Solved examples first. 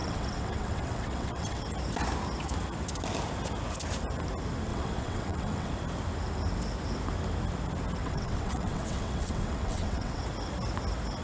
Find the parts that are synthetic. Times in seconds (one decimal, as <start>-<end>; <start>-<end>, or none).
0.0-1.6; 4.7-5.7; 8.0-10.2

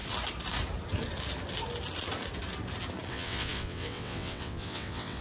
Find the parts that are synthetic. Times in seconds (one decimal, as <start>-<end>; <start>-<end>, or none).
3.1-5.2

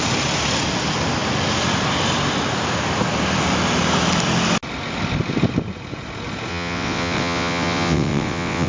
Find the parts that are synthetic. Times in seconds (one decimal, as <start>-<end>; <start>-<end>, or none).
6.5-8.7

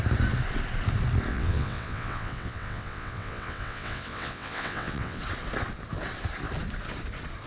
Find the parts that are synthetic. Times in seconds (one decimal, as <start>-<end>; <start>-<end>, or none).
1.3-5.2

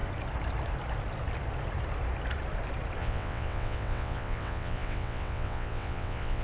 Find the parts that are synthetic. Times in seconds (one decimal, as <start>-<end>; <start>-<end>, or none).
3.0-6.4

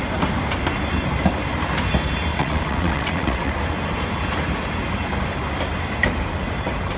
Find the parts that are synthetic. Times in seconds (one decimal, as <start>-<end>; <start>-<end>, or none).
2.3-3.5

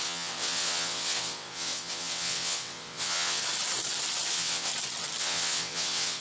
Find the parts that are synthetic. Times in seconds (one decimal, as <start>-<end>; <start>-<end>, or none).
0.0-3.4; 4.3-4.7; 5.2-6.2